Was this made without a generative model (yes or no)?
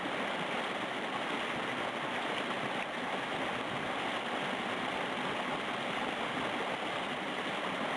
yes